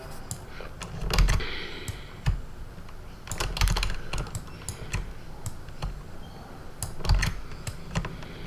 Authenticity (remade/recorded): recorded